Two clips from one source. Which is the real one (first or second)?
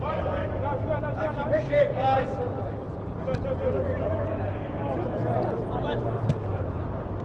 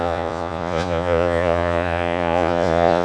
first